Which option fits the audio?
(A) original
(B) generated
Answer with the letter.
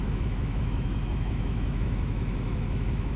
B